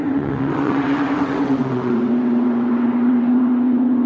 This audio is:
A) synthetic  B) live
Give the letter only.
A